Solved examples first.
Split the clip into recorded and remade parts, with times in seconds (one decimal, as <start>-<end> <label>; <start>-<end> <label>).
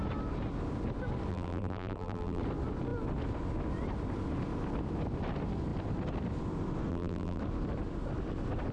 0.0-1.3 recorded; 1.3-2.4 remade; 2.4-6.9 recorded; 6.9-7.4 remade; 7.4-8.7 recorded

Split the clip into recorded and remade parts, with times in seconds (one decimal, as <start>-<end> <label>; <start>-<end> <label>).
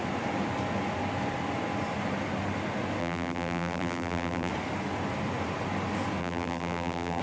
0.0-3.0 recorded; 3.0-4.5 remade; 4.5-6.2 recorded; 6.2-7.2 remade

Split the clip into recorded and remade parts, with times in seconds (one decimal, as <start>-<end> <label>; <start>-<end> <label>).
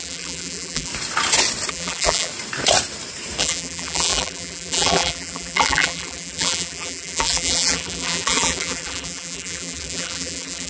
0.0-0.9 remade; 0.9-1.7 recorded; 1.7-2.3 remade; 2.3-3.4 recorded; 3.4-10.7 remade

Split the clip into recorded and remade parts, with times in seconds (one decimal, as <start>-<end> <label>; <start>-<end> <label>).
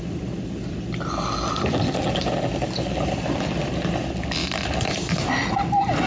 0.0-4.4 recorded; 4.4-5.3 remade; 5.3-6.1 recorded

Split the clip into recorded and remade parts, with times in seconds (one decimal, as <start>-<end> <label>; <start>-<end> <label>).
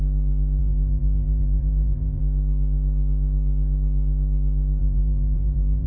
0.0-0.6 recorded; 0.6-2.2 remade; 2.2-4.8 recorded; 4.8-5.9 remade